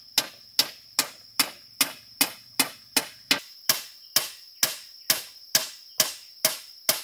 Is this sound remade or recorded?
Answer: recorded